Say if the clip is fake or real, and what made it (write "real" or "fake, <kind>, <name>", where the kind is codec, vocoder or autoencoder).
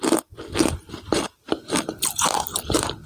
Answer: real